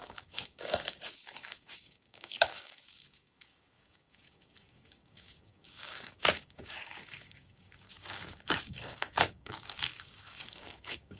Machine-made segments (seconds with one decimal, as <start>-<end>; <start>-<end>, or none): 0.0-11.2